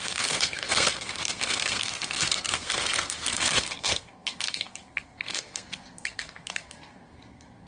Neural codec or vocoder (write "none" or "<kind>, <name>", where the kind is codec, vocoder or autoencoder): codec, SNAC